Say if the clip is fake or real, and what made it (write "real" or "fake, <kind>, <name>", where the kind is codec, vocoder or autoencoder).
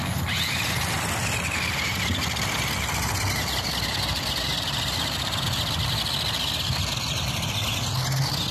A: real